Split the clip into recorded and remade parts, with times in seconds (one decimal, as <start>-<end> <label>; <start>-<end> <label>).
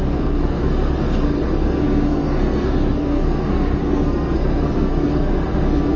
0.0-6.0 remade